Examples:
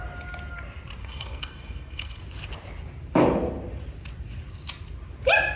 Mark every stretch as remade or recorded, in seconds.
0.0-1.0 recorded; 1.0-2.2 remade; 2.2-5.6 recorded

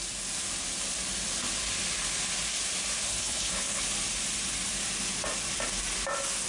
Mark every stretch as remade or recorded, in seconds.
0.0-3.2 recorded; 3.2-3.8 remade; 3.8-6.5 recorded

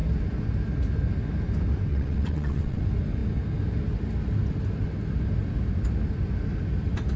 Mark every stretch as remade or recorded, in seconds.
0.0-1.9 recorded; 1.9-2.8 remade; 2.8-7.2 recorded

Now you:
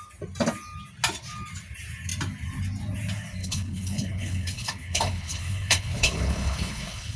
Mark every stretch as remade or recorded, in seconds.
0.0-3.4 recorded; 3.4-7.2 remade

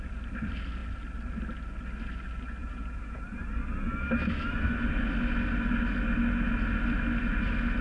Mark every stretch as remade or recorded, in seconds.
0.0-2.6 recorded; 2.6-3.2 remade; 3.2-7.8 recorded

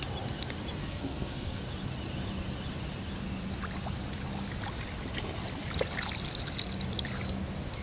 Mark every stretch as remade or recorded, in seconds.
0.0-0.8 recorded; 0.8-1.6 remade; 1.6-7.8 recorded